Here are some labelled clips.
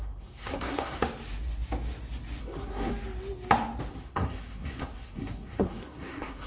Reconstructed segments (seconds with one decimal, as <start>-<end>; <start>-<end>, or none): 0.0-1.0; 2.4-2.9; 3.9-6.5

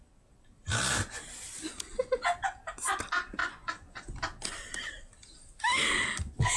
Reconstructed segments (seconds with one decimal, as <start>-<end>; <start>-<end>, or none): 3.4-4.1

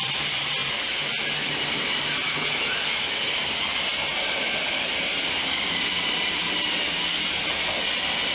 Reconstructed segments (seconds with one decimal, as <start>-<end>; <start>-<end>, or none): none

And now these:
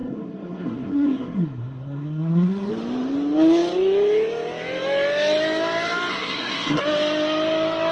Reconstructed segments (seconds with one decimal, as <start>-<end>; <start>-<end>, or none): 0.0-2.7; 6.1-6.8

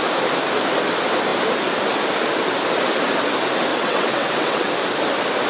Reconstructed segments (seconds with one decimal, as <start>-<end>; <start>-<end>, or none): 3.7-4.7

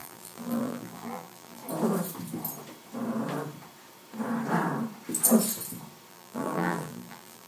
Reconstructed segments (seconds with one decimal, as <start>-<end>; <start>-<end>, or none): 0.0-1.6; 6.1-7.5